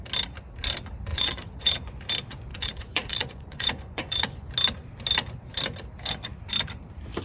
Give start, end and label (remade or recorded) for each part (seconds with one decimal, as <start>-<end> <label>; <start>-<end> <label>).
0.0-1.1 recorded; 1.1-2.0 remade; 2.0-2.5 recorded; 2.5-4.5 remade; 4.5-7.2 recorded